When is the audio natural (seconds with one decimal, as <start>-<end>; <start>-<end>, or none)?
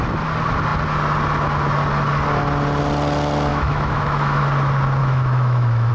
0.0-3.5; 4.4-5.0